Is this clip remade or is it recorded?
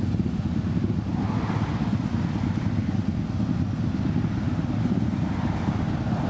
recorded